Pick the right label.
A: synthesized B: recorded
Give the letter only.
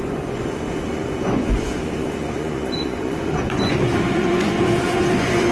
A